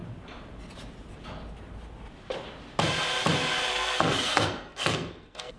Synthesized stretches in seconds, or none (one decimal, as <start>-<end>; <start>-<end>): 3.7-5.6